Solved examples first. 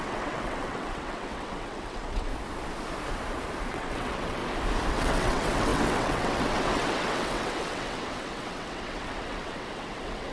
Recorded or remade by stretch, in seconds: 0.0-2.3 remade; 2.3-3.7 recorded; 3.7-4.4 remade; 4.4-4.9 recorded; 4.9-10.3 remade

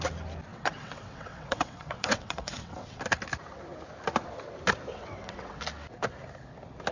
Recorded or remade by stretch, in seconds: 0.0-0.5 recorded; 0.5-3.0 remade; 3.0-4.9 recorded; 4.9-5.6 remade; 5.6-6.9 recorded

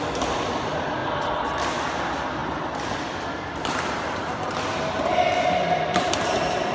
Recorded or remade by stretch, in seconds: 0.0-6.7 recorded